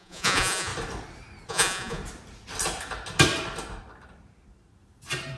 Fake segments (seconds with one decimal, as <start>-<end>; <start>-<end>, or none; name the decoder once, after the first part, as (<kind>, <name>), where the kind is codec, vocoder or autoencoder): 0.0-0.7 (vocoder, Vocos); 1.5-2.0